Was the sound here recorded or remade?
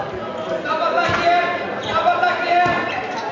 recorded